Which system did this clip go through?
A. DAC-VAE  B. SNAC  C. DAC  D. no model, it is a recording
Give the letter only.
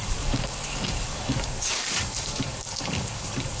C